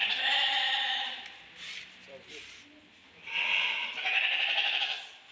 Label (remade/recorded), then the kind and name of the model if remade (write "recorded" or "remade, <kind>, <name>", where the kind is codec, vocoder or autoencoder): recorded